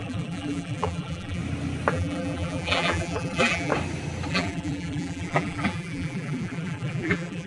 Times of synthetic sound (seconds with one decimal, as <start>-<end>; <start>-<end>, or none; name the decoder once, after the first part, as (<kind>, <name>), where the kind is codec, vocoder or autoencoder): 0.0-1.4 (vocoder, BigVGAN v2); 1.9-3.7; 4.3-7.5

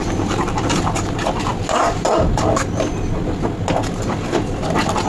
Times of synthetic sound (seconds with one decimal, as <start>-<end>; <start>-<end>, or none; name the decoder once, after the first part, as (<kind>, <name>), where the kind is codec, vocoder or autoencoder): none

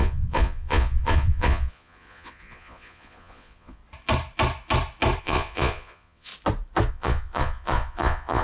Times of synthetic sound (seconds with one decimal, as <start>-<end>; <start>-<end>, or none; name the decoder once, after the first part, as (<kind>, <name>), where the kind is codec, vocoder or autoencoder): 0.0-3.8 (vocoder, Vocos); 5.2-6.3; 6.9-8.4

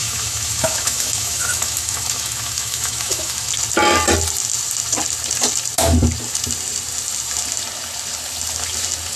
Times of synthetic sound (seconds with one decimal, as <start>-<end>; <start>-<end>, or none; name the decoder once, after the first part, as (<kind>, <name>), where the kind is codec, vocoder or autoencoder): 0.0-3.5 (autoencoder, DAC-VAE)

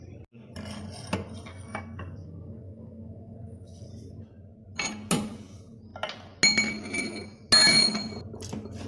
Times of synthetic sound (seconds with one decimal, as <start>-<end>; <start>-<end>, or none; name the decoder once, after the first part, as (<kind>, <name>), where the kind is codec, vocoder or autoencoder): 1.5-3.9 (codec, SNAC)

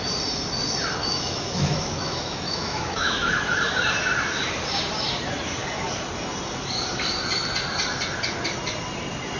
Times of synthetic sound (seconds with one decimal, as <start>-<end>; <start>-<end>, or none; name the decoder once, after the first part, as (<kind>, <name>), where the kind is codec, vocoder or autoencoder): 1.0-3.4 (autoencoder, DAC-VAE)